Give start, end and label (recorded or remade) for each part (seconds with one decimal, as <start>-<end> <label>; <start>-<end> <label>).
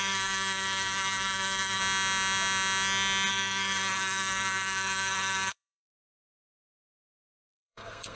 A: 0.0-1.8 remade; 1.8-3.3 recorded; 3.3-8.2 remade